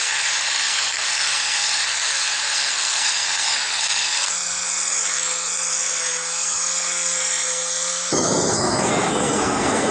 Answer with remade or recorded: remade